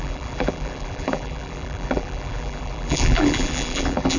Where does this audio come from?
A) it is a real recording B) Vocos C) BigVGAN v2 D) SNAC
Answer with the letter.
C